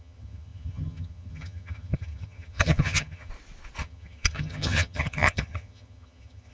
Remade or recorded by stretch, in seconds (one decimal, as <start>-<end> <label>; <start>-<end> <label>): 0.0-3.3 remade; 3.3-3.8 recorded; 3.8-6.5 remade